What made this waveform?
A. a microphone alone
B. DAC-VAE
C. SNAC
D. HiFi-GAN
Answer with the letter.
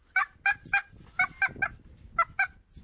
A